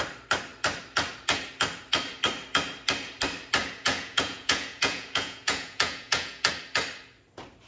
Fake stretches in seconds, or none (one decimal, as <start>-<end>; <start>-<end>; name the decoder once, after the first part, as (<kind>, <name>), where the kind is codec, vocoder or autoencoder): 3.6-6.5 (vocoder, Vocos)